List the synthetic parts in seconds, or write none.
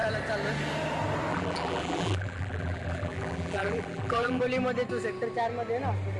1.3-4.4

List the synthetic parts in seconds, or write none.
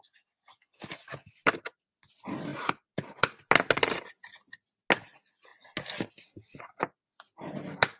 none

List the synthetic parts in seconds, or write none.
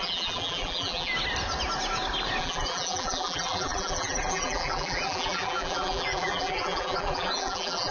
0.0-1.1; 2.4-7.9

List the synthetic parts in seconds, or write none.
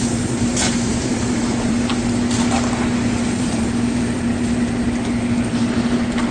0.0-1.9; 3.4-4.3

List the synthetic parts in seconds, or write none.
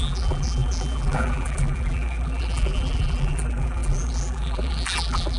0.0-5.4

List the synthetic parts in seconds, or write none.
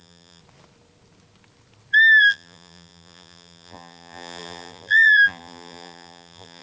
0.0-0.4; 2.2-6.6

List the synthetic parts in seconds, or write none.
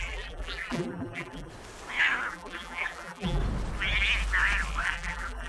0.0-1.5; 2.3-3.4; 4.8-5.5